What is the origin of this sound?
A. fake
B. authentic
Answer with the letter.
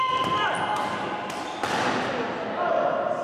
B